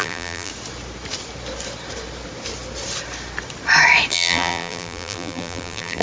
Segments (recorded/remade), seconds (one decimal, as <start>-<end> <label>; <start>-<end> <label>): 0.0-0.5 remade; 0.5-4.1 recorded; 4.1-6.0 remade